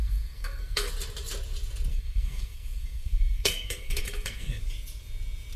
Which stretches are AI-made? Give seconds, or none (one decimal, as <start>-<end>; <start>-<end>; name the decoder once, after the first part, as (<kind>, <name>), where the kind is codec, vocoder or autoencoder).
0.0-0.9 (codec, SNAC); 1.9-4.6